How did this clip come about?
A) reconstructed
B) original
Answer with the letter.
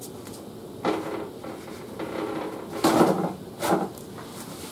B